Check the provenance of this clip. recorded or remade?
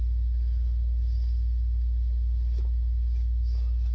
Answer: recorded